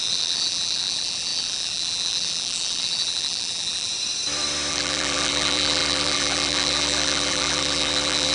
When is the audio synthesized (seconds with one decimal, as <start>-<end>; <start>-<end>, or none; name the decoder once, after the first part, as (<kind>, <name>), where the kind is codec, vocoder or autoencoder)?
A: 0.0-3.9 (vocoder, BigVGAN v2); 4.7-8.3